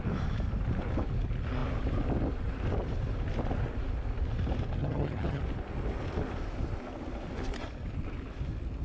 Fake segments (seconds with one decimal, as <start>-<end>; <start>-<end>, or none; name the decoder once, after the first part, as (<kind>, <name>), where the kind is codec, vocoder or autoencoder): 4.8-5.4 (vocoder, HiFi-GAN)